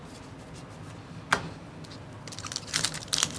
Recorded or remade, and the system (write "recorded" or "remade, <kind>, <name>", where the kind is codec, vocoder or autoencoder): recorded